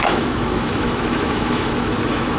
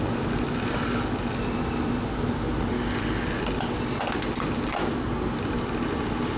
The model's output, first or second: first